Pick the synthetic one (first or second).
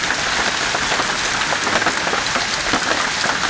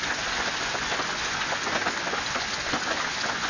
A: second